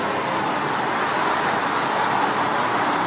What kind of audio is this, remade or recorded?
recorded